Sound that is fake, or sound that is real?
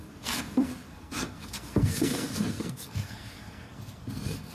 fake